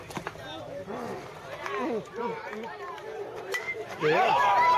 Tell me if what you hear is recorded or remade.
remade